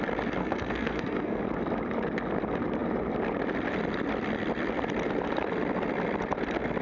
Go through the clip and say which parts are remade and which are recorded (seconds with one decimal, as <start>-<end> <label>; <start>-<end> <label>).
0.0-0.4 recorded; 0.4-1.4 remade; 1.4-6.8 recorded